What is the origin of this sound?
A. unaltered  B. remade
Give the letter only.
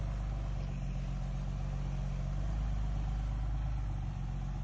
A